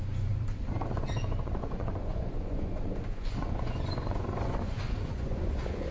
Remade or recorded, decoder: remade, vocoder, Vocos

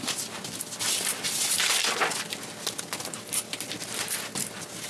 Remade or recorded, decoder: recorded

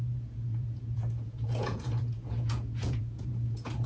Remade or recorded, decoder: remade, vocoder, Vocos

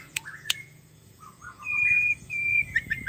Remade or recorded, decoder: remade, vocoder, Vocos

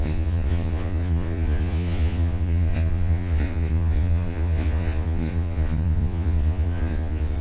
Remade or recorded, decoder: remade, vocoder, Vocos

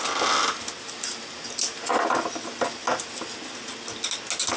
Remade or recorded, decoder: recorded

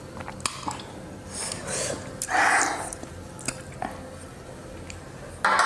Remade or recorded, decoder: recorded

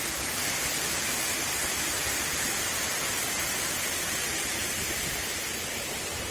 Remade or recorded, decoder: recorded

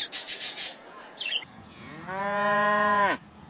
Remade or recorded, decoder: remade, vocoder, Vocos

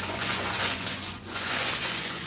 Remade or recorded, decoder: remade, vocoder, Vocos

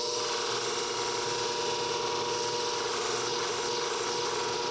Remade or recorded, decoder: recorded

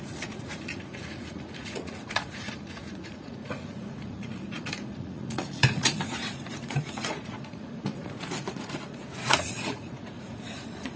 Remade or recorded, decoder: remade, vocoder, Vocos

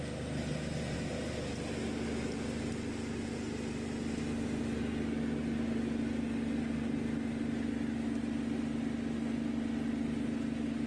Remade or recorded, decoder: recorded